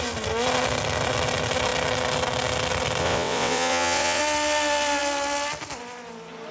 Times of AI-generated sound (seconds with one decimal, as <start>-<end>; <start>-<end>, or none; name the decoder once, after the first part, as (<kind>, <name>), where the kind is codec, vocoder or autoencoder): 3.0-4.2 (vocoder, WaveNeXt)